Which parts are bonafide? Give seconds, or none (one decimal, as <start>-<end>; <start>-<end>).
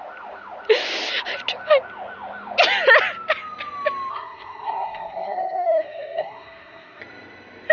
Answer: 0.0-4.1; 7.0-7.7